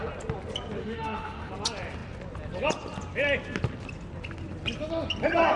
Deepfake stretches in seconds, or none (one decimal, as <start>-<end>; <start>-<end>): 0.8-1.5